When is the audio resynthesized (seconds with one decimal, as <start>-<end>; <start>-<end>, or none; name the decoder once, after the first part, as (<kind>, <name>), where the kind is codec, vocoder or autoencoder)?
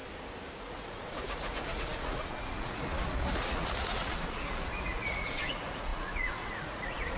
0.6-7.2 (vocoder, Vocos)